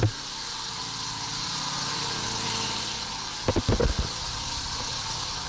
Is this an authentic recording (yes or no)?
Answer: yes